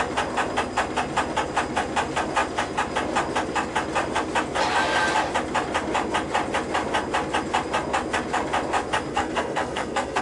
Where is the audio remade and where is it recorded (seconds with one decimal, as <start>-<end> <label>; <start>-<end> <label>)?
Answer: 0.0-9.1 recorded; 9.1-10.2 remade